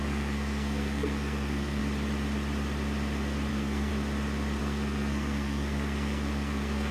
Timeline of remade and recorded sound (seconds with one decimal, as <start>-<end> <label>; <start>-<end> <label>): 0.0-1.8 remade; 1.8-3.5 recorded; 3.5-3.9 remade; 3.9-4.6 recorded; 4.6-6.9 remade